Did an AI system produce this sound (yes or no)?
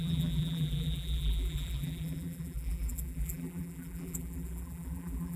yes